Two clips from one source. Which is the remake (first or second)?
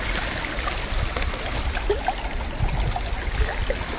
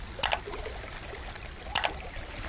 second